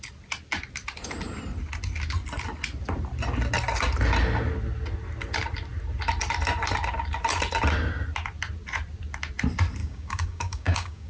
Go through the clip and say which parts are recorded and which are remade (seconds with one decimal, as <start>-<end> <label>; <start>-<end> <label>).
0.0-9.8 recorded; 9.8-11.1 remade